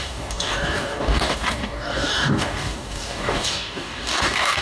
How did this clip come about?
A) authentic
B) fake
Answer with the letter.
B